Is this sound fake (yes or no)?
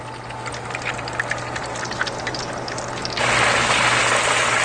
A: no